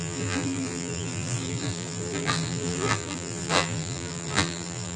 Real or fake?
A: fake